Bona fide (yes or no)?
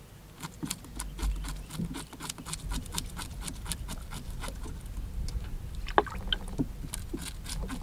yes